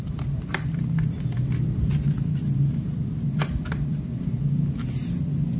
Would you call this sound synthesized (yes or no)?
yes